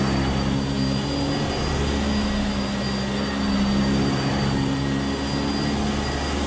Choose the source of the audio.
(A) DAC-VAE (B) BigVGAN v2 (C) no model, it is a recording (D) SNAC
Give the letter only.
C